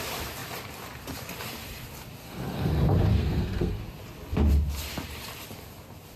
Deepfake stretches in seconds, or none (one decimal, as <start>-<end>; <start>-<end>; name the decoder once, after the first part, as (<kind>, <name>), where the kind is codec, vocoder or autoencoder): 2.2-2.7 (codec, SNAC); 3.2-3.8